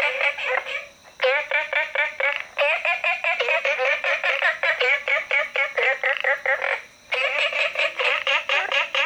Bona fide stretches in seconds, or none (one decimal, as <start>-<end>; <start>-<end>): 1.0-4.3; 5.4-7.9

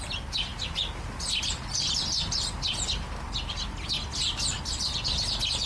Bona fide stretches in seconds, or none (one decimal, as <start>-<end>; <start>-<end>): 0.0-5.7

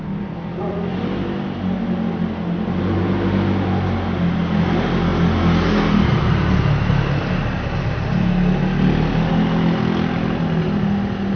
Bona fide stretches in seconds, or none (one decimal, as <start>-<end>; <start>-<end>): 0.0-11.4

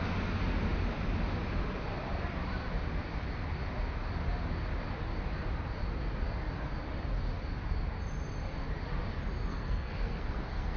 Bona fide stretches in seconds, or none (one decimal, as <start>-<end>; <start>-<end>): 0.0-9.5